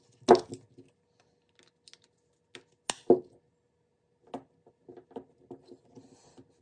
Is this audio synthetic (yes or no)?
no